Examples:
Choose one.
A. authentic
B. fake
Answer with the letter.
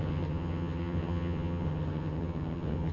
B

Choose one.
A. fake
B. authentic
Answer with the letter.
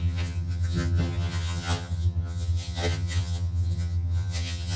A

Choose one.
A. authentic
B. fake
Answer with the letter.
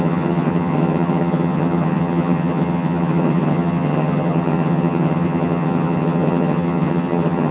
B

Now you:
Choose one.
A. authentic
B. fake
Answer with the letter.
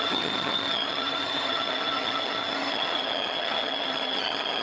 B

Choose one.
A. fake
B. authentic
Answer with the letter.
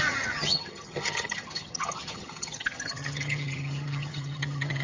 A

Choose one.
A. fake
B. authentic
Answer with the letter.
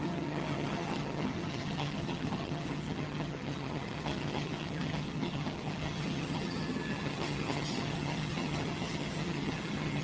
A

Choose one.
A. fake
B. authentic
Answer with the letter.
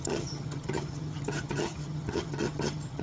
A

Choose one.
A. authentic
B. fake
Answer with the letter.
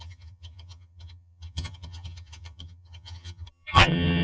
B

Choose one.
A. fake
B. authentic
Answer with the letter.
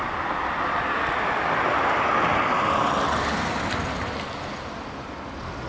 B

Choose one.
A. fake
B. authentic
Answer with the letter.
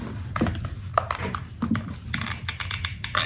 B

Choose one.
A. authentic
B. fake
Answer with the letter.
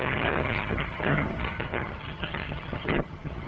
B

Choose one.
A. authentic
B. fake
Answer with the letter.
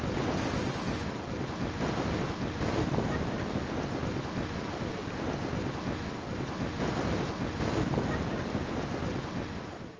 A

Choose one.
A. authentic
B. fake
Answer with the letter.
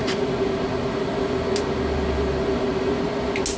A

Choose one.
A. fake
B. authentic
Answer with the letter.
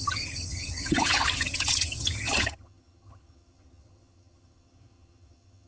A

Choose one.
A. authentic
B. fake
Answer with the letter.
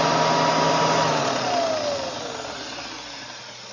A